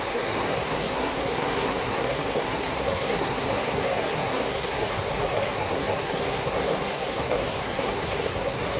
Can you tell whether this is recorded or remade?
remade